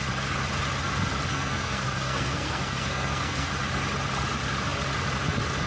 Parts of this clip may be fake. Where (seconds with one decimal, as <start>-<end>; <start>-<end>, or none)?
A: 1.3-3.5

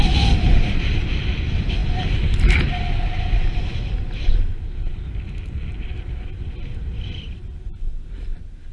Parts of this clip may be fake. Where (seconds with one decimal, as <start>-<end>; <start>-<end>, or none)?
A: none

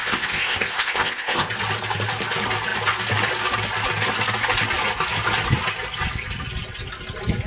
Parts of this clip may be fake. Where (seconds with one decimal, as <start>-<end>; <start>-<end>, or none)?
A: 0.0-1.5

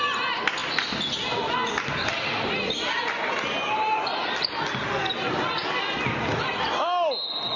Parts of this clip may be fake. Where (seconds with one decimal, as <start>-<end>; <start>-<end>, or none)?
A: none